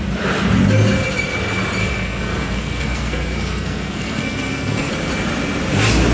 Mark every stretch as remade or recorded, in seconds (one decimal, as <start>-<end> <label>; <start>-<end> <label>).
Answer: 0.0-1.8 recorded; 1.8-4.9 remade; 4.9-6.1 recorded